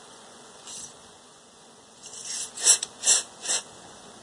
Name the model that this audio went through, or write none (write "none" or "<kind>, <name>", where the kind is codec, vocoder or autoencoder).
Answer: vocoder, Vocos